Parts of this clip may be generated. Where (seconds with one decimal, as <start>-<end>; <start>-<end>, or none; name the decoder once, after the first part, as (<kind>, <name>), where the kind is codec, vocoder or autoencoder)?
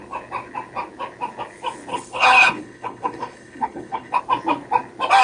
1.9-4.2 (codec, HILCodec)